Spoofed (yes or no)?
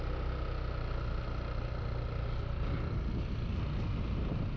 no